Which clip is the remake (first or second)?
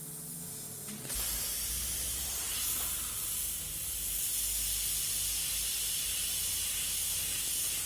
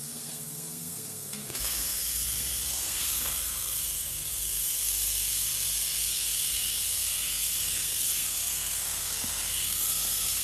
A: second